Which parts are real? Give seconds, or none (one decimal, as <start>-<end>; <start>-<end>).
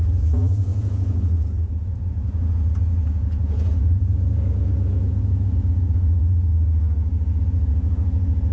6.5-7.4